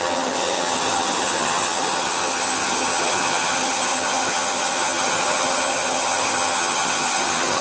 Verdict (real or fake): fake